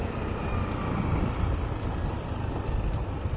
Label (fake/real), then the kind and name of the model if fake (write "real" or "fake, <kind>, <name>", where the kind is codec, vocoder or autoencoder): real